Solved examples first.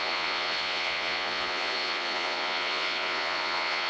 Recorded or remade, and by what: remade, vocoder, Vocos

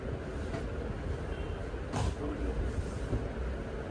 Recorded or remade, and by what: recorded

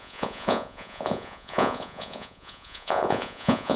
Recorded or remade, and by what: remade, vocoder, Vocos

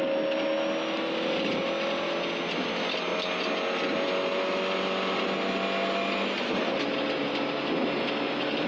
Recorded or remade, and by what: recorded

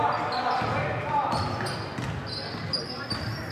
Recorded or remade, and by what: recorded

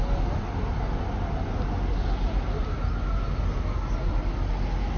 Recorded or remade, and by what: recorded